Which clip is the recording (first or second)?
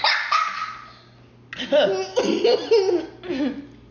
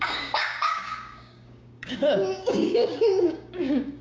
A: first